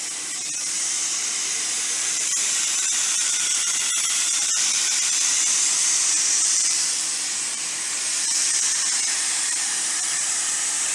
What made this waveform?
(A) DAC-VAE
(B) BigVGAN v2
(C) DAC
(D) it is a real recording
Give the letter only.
B